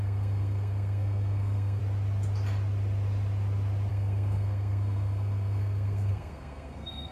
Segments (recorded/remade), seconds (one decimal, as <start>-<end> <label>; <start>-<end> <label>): 0.0-1.8 remade; 1.8-3.9 recorded; 3.9-7.1 remade